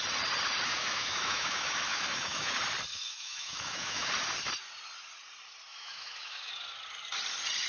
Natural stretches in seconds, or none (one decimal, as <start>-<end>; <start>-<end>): 0.0-0.7; 2.5-2.9; 4.1-5.7; 6.5-7.7